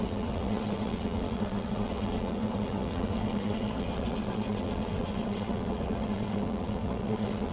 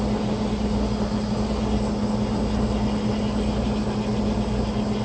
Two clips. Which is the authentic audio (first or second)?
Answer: second